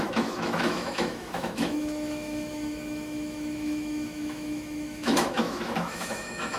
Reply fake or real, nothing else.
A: fake